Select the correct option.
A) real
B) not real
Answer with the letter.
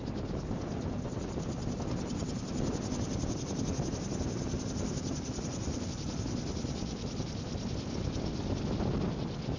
A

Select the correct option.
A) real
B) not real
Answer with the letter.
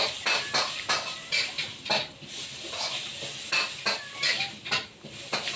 A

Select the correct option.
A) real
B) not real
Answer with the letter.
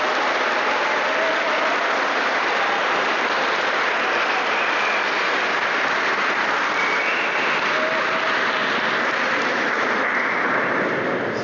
B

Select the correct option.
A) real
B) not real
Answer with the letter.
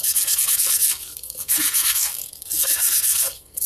B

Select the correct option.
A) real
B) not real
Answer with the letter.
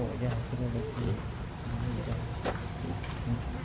A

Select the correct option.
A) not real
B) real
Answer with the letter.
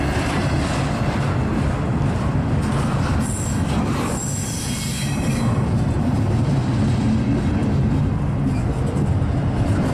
B